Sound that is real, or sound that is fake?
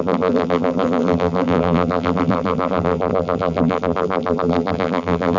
fake